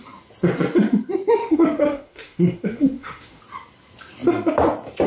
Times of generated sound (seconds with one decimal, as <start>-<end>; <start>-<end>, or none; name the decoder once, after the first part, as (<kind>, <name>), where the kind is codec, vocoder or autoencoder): 1.4-3.4 (autoencoder, DAC-VAE)